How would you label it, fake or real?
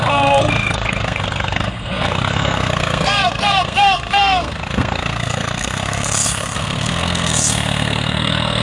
fake